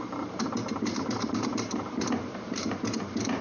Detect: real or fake fake